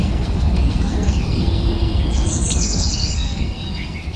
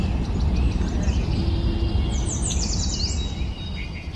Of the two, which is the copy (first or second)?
first